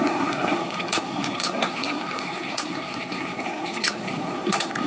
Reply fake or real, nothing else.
fake